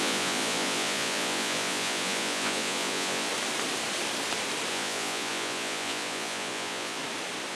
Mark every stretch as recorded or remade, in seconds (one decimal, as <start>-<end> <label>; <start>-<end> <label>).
0.0-3.3 remade; 3.3-4.7 recorded; 4.7-7.0 remade; 7.0-7.5 recorded

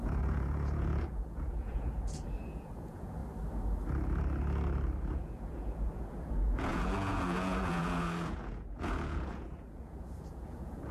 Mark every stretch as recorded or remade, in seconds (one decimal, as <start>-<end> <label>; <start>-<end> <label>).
0.0-3.2 remade; 3.2-5.1 recorded; 5.1-10.9 remade

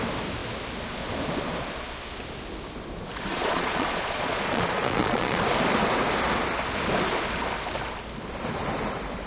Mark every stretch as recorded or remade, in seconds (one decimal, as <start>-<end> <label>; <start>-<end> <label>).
0.0-3.3 recorded; 3.3-5.4 remade; 5.4-9.3 recorded

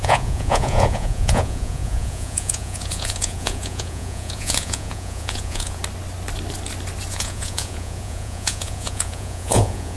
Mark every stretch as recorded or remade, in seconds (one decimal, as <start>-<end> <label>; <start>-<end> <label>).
0.0-5.8 remade; 5.8-7.1 recorded; 7.1-10.0 remade

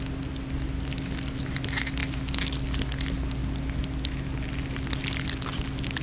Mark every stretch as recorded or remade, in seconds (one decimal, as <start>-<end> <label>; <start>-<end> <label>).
0.0-6.0 recorded